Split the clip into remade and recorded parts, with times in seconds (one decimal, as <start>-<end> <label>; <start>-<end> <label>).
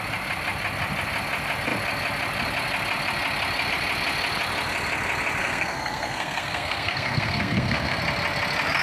0.0-5.4 recorded; 5.4-8.0 remade; 8.0-8.8 recorded